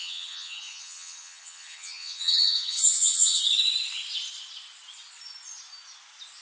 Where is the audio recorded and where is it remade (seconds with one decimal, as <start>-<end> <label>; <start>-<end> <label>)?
0.0-3.4 remade; 3.4-6.4 recorded